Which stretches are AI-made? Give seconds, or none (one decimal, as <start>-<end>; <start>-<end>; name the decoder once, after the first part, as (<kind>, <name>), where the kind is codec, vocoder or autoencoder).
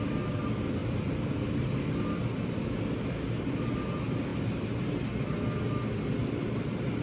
none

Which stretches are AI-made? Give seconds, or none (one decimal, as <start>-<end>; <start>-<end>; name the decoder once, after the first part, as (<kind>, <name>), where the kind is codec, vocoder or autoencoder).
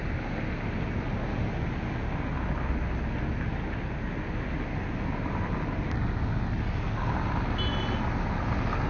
none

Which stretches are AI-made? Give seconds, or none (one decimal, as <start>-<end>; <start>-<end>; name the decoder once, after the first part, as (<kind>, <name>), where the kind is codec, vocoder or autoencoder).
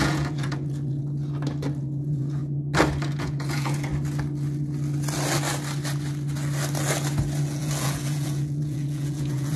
0.0-1.0 (vocoder, Vocos); 1.8-2.4; 3.2-3.9; 7.4-9.6